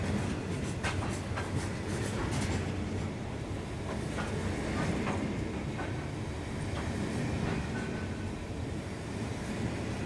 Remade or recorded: recorded